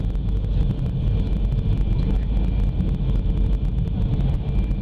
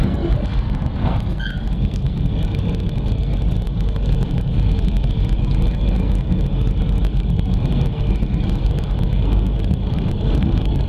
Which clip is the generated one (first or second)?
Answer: second